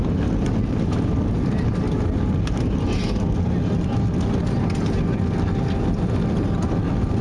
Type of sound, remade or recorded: recorded